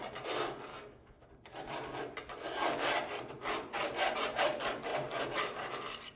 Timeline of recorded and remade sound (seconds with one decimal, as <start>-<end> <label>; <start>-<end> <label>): 0.0-0.7 recorded; 0.7-1.3 remade; 1.3-6.2 recorded